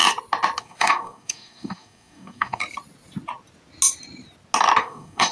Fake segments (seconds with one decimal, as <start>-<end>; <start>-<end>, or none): 0.6-2.6; 4.8-5.3